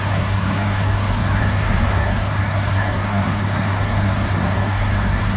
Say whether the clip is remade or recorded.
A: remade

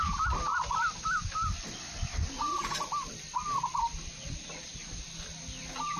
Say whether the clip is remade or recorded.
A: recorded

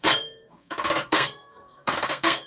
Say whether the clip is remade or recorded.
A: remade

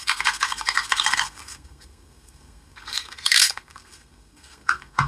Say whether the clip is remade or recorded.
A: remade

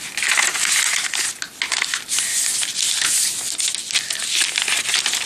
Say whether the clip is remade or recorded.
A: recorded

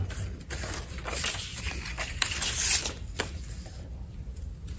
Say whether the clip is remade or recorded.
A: recorded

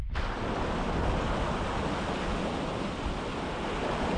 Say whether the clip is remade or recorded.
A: recorded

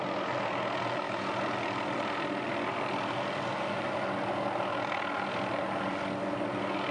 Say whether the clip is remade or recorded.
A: recorded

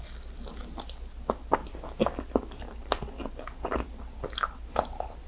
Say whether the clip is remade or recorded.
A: recorded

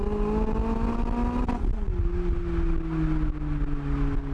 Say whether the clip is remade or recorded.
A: recorded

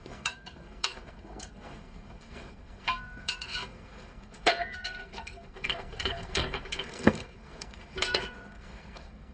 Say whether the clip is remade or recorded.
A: remade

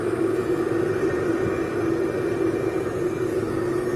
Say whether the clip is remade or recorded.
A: recorded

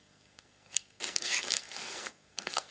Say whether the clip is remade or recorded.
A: remade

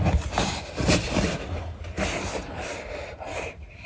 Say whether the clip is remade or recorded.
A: recorded